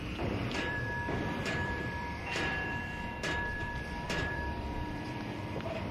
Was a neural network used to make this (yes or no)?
yes